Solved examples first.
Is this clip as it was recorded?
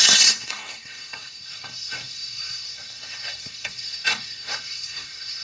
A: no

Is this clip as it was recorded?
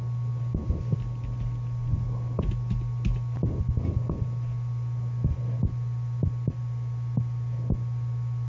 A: yes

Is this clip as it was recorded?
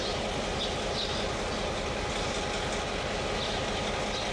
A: yes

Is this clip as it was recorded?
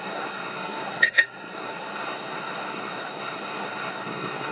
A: no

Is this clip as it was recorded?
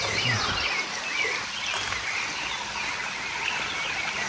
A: yes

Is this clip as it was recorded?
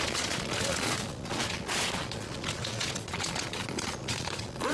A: no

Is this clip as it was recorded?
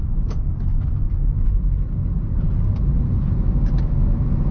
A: yes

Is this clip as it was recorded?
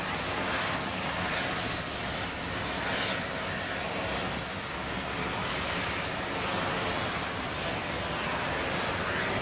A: yes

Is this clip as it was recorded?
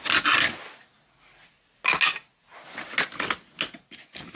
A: yes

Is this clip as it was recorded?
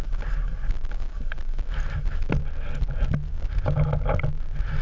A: yes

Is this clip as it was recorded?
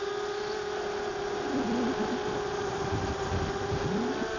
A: yes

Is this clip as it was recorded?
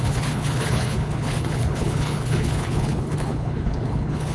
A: no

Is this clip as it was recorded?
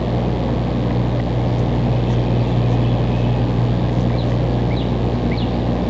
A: yes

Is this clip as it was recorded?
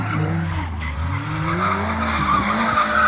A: yes